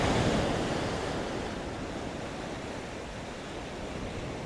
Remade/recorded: recorded